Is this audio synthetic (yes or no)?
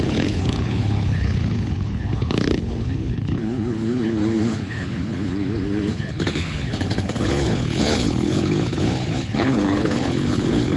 yes